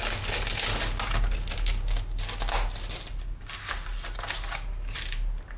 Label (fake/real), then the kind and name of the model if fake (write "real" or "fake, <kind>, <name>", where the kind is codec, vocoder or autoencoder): real